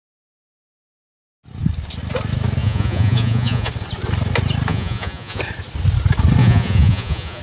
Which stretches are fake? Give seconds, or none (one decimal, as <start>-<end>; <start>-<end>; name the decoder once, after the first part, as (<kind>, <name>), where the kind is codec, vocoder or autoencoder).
2.6-3.7 (vocoder, Vocos); 4.7-5.4; 6.4-7.4